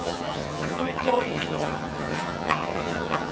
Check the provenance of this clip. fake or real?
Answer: fake